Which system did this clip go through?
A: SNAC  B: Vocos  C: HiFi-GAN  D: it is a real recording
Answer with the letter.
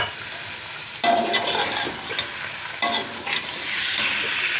D